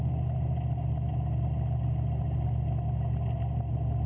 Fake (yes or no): no